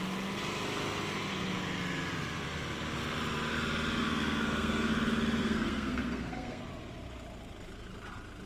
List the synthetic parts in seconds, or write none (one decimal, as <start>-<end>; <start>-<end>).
4.0-4.9; 5.4-6.6